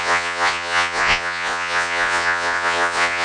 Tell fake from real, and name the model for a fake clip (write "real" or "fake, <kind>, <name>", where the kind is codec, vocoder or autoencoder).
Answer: fake, vocoder, Vocos